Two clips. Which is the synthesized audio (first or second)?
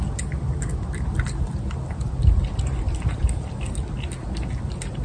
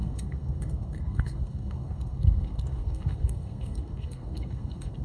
second